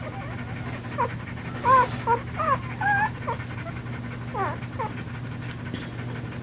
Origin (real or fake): real